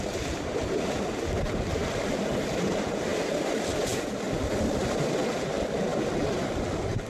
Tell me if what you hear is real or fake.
fake